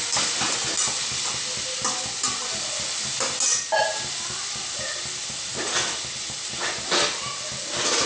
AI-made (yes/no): no